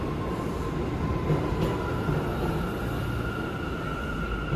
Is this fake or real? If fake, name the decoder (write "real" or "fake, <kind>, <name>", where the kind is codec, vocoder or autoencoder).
real